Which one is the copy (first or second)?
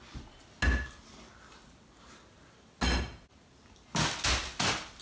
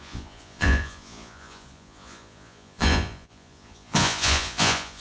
second